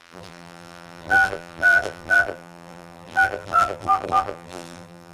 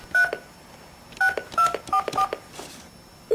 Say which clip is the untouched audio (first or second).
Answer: second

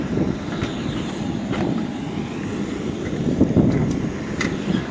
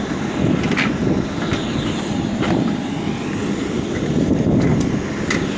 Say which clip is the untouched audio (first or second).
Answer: second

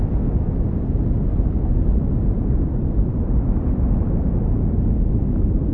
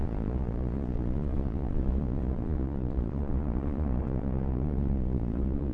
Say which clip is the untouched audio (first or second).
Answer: first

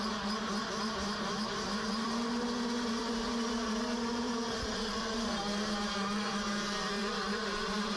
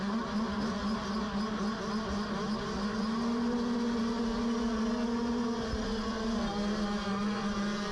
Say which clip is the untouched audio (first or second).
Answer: second